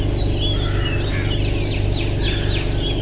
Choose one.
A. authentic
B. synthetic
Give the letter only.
A